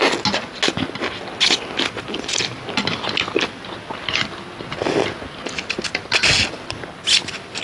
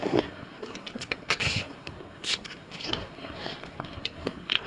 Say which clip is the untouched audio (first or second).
first